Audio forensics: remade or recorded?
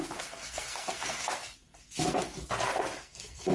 remade